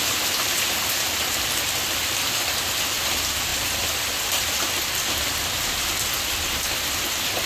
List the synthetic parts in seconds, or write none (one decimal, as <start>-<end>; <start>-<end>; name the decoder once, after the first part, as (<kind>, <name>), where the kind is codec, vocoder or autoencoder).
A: 3.5-5.0 (vocoder, BigVGAN v2)